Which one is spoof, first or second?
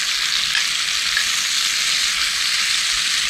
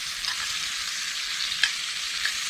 second